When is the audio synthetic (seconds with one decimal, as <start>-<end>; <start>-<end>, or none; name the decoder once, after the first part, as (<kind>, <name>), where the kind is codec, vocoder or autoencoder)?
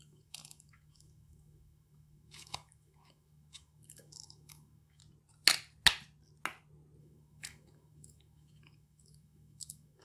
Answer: 0.0-5.0 (autoencoder, DAC-VAE); 7.0-10.0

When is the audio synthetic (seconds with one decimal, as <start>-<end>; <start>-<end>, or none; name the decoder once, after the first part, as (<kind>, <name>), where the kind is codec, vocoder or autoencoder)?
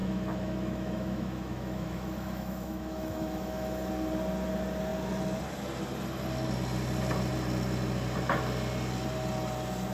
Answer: 0.0-3.9 (autoencoder, DAC-VAE)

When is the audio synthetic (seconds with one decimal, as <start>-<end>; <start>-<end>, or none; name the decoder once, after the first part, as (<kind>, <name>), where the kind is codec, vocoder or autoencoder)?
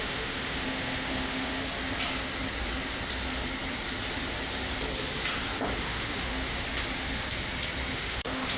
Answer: 0.0-1.6 (autoencoder, DAC-VAE); 5.8-6.6; 7.9-8.6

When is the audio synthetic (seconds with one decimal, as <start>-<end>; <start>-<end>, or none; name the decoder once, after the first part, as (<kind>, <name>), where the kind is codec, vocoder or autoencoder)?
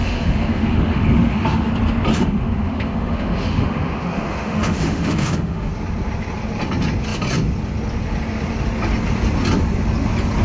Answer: 0.0-1.7 (autoencoder, DAC-VAE); 2.1-5.7